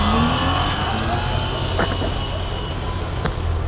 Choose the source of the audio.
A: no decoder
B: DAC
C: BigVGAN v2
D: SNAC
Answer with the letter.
A